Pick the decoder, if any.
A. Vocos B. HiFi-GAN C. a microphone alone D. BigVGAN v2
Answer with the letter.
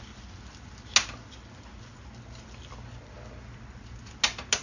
C